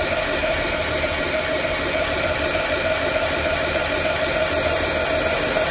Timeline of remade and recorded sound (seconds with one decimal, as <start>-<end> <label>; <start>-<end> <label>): 0.0-0.4 recorded; 0.4-3.8 remade; 3.8-5.7 recorded